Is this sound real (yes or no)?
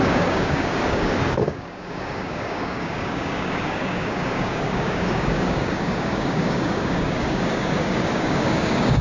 no